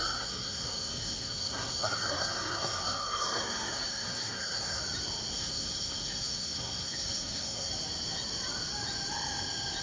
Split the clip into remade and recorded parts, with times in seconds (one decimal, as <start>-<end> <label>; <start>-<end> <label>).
0.0-4.8 remade; 4.8-5.3 recorded; 5.3-7.7 remade; 7.7-9.8 recorded